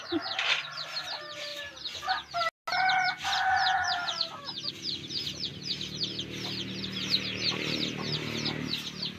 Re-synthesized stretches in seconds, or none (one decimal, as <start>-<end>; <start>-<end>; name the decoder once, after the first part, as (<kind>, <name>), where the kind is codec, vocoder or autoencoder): 5.5-6.0 (vocoder, BigVGAN v2)